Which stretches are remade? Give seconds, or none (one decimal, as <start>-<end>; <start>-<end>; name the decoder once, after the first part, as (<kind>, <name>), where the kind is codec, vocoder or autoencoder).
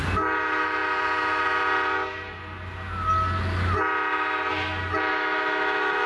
5.1-6.1 (autoencoder, DAC-VAE)